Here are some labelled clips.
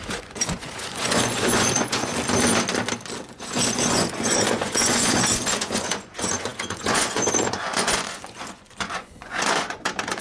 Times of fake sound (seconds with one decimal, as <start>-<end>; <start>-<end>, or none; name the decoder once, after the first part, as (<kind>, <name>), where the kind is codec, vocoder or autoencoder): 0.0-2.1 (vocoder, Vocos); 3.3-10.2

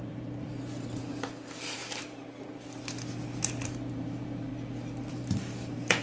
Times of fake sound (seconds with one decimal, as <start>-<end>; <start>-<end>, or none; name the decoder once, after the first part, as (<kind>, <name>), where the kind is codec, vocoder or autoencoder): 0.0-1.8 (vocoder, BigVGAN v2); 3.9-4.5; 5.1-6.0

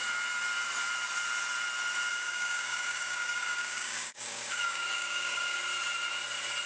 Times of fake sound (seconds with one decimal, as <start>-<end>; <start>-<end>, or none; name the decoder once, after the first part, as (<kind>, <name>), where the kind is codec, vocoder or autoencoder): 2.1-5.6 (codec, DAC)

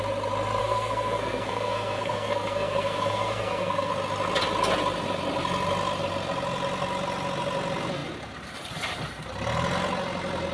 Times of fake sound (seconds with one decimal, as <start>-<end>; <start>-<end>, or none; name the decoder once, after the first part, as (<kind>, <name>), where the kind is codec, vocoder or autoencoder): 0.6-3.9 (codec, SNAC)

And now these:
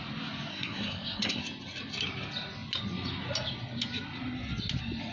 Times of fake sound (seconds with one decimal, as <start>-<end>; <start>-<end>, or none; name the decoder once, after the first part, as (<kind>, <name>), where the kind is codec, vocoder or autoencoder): 0.5-1.4 (codec, SNAC)